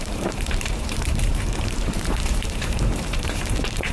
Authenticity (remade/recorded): remade